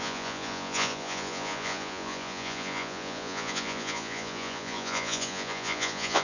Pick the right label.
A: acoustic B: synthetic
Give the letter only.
B